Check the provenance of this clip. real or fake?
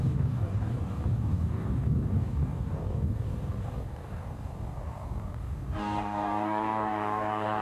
fake